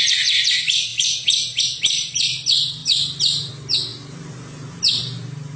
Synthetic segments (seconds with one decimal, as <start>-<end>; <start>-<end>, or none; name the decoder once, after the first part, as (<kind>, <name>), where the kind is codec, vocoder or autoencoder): none